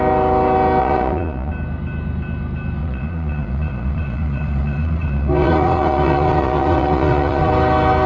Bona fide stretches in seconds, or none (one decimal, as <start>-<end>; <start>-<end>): 0.0-0.8; 1.5-2.8; 7.5-8.1